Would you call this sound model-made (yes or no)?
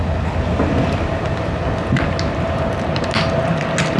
no